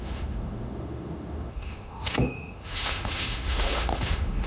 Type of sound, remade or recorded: remade